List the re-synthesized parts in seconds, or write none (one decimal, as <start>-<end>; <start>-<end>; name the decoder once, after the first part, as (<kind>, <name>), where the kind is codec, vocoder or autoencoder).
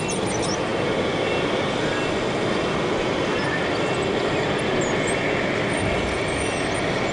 none